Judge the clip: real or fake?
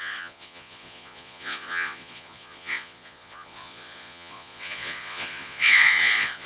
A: fake